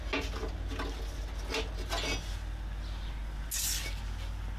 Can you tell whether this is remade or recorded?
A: recorded